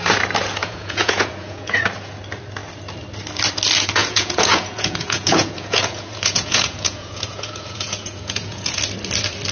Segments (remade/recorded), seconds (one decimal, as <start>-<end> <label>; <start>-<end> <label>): 0.0-0.6 recorded; 0.6-1.8 remade; 1.8-4.0 recorded; 4.0-8.8 remade; 8.8-9.5 recorded